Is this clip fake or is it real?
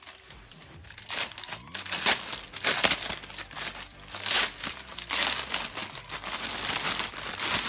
real